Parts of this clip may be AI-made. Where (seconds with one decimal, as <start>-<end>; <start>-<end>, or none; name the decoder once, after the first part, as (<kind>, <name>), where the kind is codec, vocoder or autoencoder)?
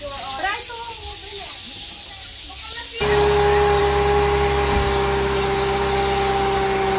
none